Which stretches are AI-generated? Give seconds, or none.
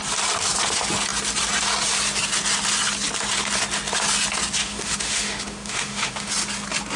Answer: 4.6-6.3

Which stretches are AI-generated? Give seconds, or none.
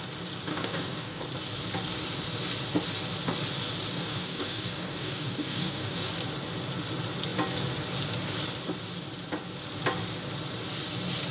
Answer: 0.5-1.2; 3.9-6.1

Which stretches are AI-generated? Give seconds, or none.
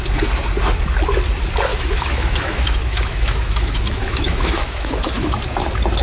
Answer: 1.7-5.3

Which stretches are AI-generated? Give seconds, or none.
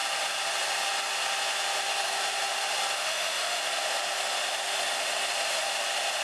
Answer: 3.0-3.6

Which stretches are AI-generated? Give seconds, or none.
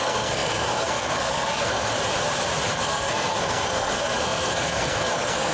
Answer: 0.0-1.9; 2.7-5.5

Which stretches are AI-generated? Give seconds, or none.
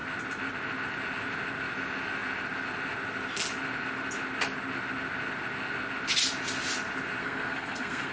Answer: 7.2-8.1